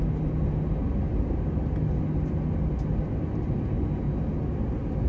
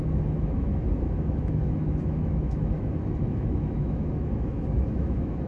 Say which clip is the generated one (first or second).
second